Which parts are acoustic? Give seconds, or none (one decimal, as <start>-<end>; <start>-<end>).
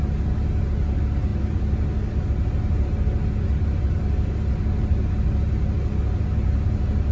0.0-7.1